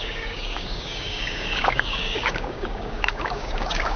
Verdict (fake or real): fake